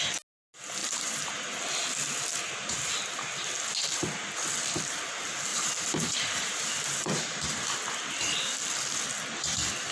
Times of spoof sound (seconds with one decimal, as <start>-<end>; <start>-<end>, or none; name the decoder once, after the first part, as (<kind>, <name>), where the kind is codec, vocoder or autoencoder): 0.8-1.3 (vocoder, BigVGAN v2); 5.5-7.2